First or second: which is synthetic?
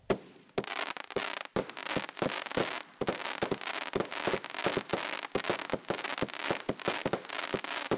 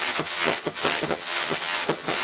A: second